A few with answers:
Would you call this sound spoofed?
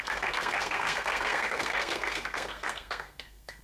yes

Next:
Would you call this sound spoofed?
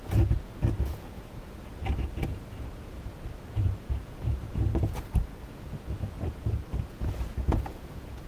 yes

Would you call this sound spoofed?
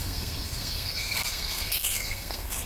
yes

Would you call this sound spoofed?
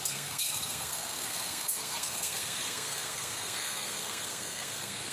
yes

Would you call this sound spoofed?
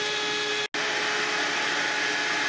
no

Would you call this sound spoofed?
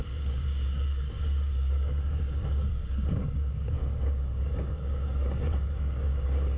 yes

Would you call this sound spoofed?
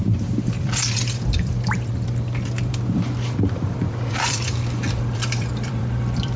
yes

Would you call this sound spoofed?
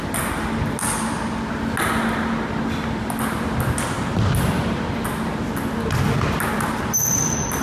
no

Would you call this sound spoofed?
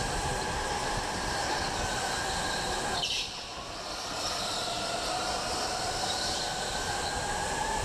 no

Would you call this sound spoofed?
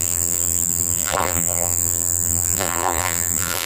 yes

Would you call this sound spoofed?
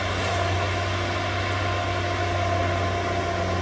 no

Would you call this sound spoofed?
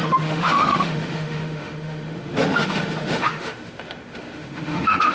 yes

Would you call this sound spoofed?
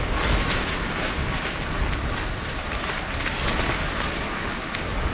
no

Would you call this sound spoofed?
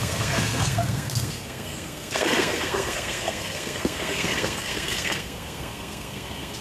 yes